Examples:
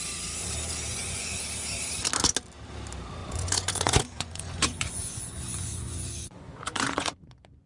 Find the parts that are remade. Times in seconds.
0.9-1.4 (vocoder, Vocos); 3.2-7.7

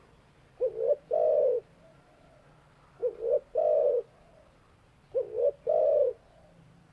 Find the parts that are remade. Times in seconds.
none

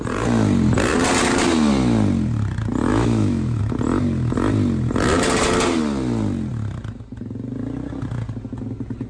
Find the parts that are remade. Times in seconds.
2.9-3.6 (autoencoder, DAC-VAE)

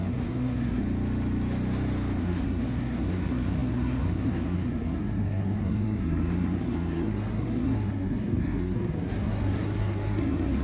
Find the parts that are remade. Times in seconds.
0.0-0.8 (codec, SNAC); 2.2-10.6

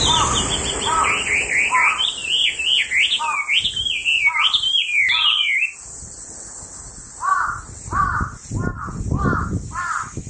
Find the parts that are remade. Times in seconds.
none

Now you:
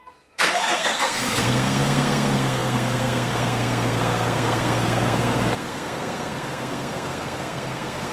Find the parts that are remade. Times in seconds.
0.0-8.1 (codec, SNAC)

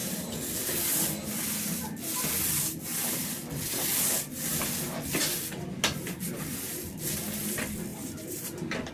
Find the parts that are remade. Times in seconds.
7.9-8.9 (vocoder, BigVGAN v2)